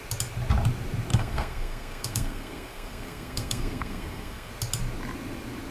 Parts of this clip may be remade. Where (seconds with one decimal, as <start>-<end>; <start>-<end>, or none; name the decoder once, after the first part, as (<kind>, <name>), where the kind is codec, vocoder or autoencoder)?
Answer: 1.1-4.5 (codec, SNAC)